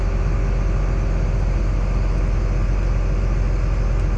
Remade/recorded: recorded